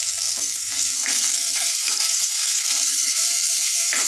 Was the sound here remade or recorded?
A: remade